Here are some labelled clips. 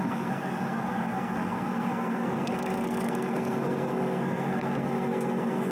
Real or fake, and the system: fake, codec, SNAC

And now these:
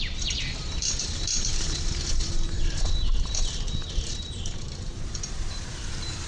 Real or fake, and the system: fake, vocoder, BigVGAN v2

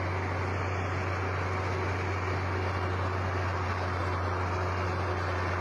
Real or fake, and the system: real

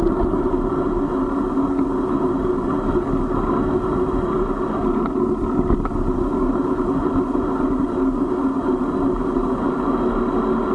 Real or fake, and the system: real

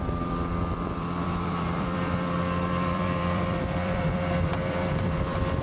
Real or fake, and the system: fake, vocoder, BigVGAN v2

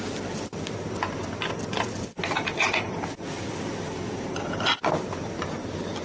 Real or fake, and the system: real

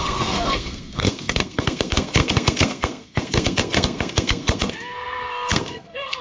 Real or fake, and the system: fake, codec, SNAC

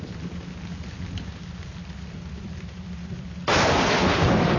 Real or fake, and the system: real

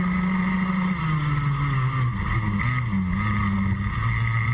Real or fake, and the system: real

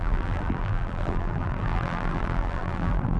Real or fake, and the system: fake, vocoder, BigVGAN v2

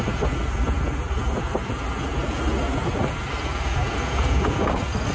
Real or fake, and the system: real